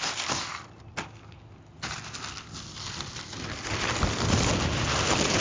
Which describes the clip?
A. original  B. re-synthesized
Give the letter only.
A